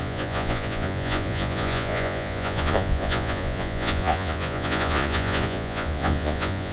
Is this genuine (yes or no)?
no